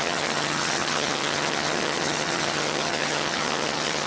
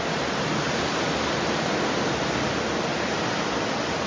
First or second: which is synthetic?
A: first